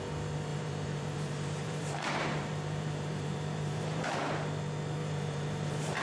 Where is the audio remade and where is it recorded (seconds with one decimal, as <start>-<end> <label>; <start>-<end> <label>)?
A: 0.0-0.5 recorded; 0.5-4.1 remade; 4.1-5.0 recorded; 5.0-6.0 remade